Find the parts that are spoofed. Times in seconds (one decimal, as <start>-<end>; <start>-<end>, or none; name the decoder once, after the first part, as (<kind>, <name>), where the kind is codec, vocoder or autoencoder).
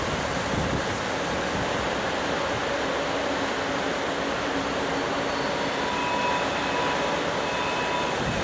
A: none